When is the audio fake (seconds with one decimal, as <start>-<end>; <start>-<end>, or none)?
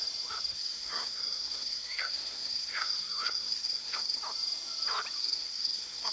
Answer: 0.5-4.2; 5.2-6.1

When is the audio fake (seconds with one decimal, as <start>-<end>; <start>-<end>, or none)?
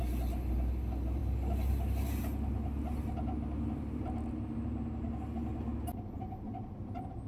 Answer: none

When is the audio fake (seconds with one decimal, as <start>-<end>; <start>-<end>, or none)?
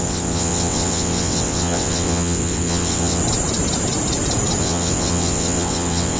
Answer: 0.0-3.2; 4.6-6.2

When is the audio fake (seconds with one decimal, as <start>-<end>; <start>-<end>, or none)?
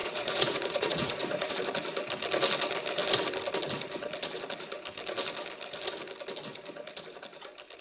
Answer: 0.0-1.5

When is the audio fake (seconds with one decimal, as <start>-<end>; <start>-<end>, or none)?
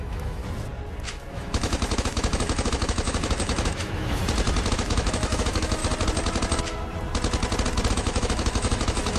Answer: 0.0-0.4; 1.3-4.2; 4.7-5.8; 7.9-9.2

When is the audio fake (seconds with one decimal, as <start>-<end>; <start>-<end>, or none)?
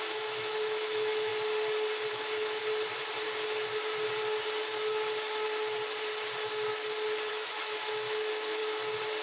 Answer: 0.0-1.3; 2.1-2.6; 7.3-8.6